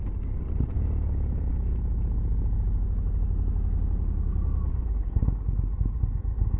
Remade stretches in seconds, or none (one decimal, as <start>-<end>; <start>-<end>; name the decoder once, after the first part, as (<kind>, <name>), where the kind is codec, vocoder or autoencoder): none